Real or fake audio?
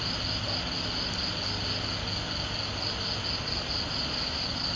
real